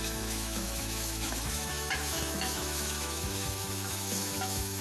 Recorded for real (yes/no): no